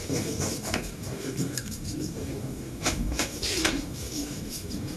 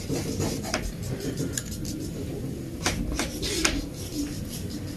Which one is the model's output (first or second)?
first